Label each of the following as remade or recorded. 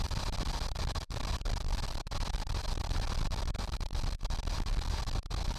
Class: recorded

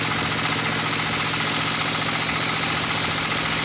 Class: recorded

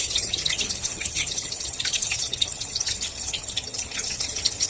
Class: remade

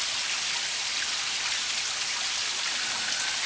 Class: recorded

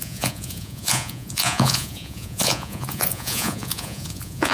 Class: remade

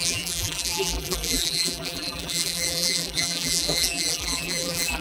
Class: remade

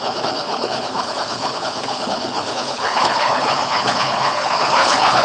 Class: remade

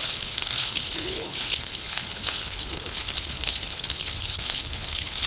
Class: remade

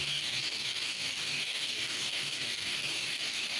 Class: remade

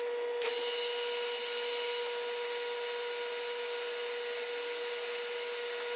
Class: recorded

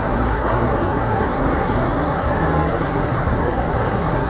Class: remade